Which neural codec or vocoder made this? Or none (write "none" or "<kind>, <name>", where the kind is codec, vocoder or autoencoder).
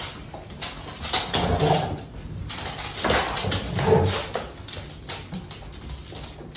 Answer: none